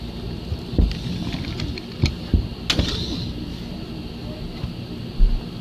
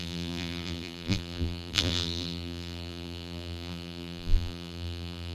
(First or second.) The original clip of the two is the first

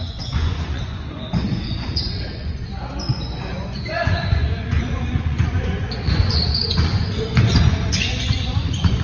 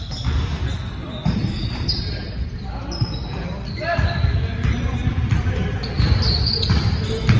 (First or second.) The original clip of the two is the second